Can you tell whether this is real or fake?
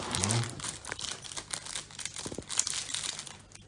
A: fake